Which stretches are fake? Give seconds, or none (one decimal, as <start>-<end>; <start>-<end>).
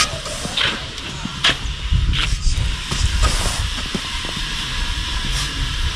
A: none